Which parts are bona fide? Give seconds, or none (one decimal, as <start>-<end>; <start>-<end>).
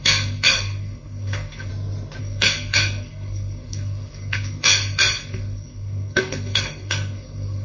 1.7-2.2